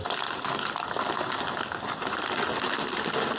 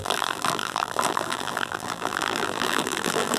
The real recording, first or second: first